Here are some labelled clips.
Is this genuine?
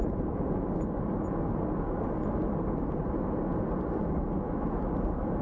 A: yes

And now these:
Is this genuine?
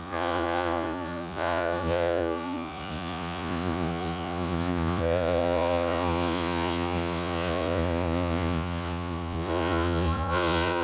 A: no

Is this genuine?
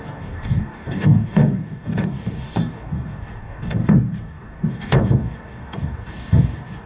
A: no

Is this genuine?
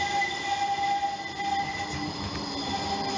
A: yes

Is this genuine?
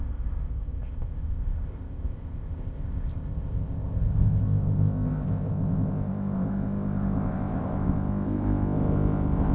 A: no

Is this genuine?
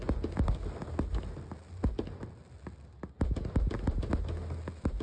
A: yes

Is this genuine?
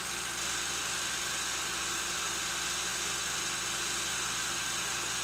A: yes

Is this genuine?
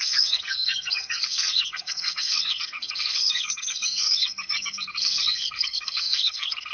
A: no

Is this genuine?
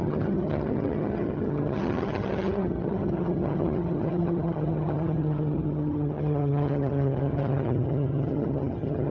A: no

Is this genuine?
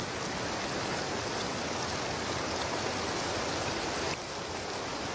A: yes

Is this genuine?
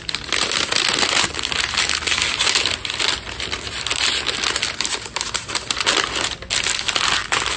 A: yes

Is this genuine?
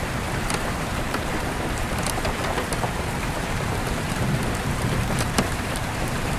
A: no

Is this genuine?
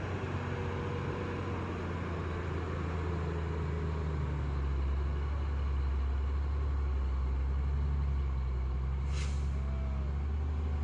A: yes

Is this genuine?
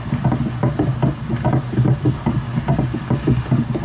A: yes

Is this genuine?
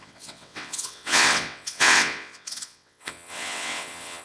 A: no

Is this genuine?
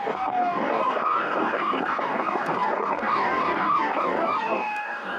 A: no